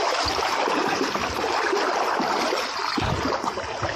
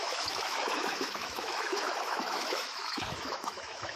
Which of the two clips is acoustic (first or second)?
first